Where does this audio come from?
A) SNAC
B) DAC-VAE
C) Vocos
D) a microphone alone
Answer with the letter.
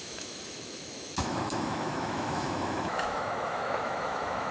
B